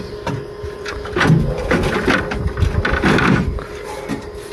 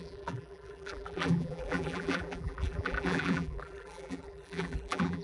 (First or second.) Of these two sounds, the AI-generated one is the second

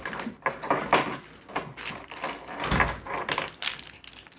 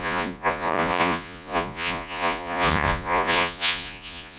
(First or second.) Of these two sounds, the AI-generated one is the second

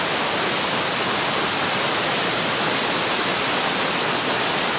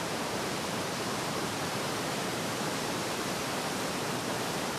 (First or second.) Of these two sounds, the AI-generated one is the second